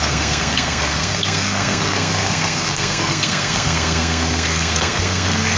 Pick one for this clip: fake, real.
fake